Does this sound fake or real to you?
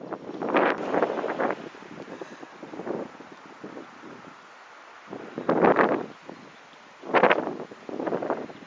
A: real